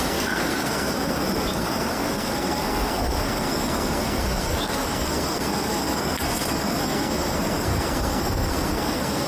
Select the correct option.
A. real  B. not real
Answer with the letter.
B